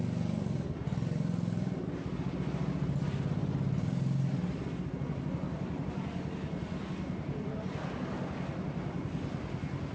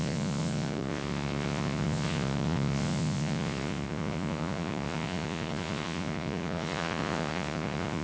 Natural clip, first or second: first